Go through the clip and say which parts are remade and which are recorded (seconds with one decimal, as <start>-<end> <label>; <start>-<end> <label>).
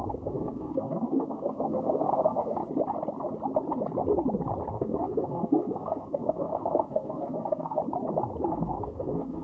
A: 0.0-2.6 remade; 2.6-4.7 recorded; 4.7-7.8 remade; 7.8-8.5 recorded; 8.5-9.4 remade